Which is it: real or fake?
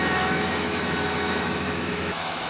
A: fake